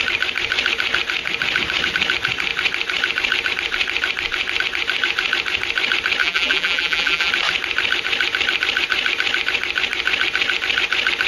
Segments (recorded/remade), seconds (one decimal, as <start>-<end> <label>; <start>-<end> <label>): 0.0-6.2 recorded; 6.2-7.3 remade; 7.3-11.3 recorded